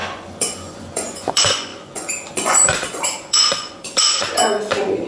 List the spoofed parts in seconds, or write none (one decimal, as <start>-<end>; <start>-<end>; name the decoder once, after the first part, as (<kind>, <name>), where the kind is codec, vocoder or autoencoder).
0.0-5.1 (vocoder, Vocos)

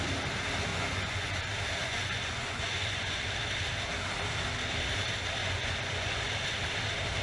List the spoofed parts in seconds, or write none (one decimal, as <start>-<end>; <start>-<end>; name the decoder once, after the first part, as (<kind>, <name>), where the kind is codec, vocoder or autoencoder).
0.7-1.4 (vocoder, Vocos); 1.8-3.2; 5.4-6.3